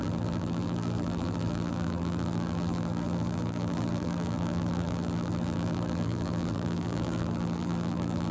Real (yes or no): no